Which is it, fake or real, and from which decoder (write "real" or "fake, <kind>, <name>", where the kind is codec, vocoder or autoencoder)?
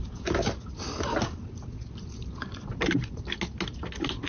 real